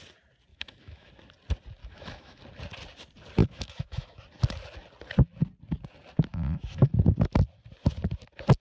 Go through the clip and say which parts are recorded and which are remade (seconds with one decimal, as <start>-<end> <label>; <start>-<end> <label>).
0.0-0.5 recorded; 0.5-1.1 remade; 1.1-1.8 recorded; 1.8-2.4 remade; 2.4-3.4 recorded; 3.4-4.2 remade; 4.2-6.3 recorded; 6.3-6.9 remade; 6.9-8.6 recorded